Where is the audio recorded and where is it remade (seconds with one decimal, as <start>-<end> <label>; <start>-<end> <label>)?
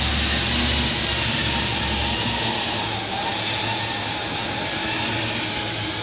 0.0-6.0 recorded